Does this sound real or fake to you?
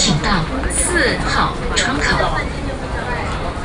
real